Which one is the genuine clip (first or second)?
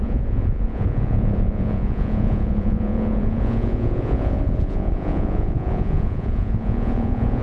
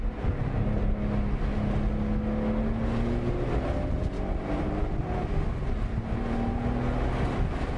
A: second